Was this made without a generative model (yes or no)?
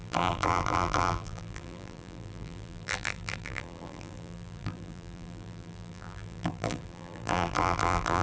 no